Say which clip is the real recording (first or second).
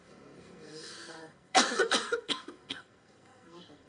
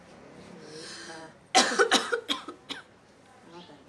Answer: second